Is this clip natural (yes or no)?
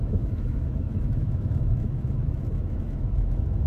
no